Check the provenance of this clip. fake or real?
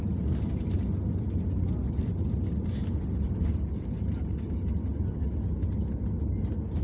real